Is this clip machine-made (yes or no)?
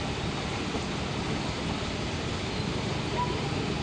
yes